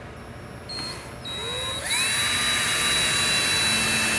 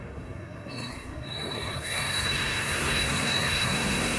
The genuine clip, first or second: first